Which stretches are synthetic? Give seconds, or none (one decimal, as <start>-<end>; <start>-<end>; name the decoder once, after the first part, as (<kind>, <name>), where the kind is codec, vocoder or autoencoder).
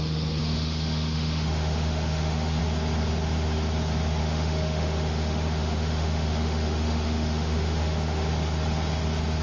0.4-2.6 (autoencoder, DAC-VAE); 4.2-8.3